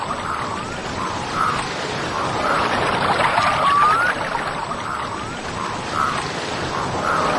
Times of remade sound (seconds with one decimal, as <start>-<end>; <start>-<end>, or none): 0.8-3.5